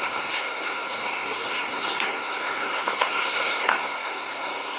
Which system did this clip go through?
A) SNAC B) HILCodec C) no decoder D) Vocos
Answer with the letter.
A